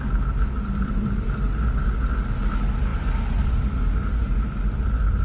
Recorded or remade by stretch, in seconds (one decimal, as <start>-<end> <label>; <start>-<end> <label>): 0.0-5.2 recorded

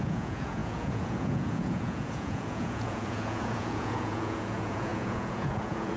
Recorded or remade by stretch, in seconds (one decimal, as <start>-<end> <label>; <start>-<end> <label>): 0.0-6.0 remade

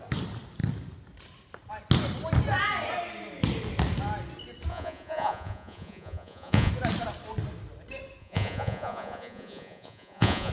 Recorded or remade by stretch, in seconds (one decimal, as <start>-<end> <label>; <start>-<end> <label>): 0.0-4.7 recorded; 4.7-6.7 remade; 6.7-8.2 recorded; 8.2-10.5 remade

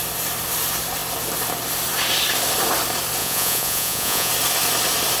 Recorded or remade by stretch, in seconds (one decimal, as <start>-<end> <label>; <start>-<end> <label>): 0.0-3.2 recorded; 3.2-4.3 remade; 4.3-5.2 recorded